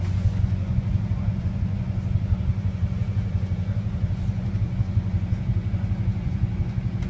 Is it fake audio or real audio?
fake